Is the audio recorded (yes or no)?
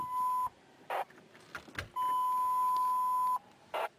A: yes